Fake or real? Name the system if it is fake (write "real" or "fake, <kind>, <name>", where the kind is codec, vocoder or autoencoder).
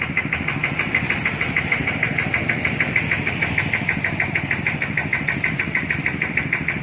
real